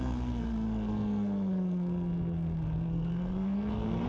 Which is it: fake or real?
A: fake